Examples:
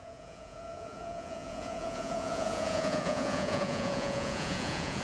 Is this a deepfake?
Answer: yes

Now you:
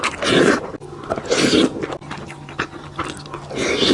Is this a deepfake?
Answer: no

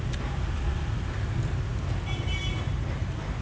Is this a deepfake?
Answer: no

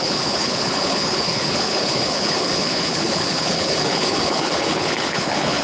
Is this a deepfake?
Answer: yes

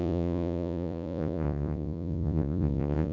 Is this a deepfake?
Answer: yes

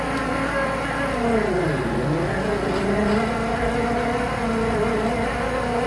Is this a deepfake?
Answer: no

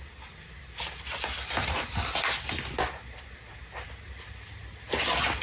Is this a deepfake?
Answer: no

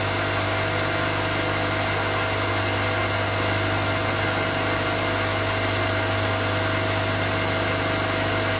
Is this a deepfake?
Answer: no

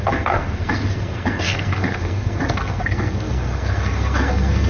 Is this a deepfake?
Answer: yes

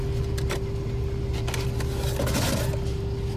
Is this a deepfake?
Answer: no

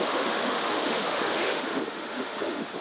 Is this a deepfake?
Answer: yes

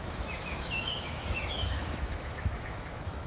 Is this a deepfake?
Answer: yes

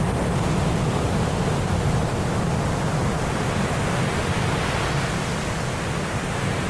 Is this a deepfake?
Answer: no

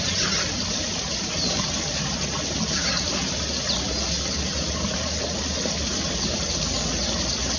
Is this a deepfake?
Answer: no